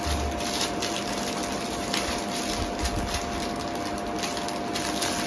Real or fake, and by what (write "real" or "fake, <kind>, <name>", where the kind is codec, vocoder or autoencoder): real